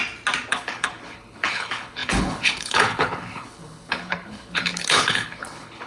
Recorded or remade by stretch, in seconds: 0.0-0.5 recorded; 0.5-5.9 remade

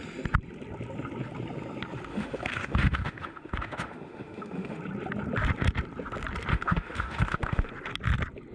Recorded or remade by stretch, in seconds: 0.0-2.1 recorded; 2.1-4.8 remade; 4.8-6.5 recorded; 6.5-7.7 remade; 7.7-8.5 recorded

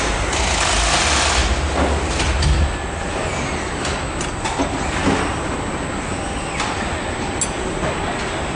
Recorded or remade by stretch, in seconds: 0.0-8.6 recorded

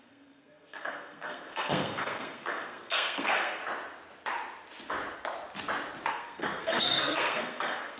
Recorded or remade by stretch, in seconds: 0.0-3.6 remade; 3.6-6.1 recorded; 6.1-8.0 remade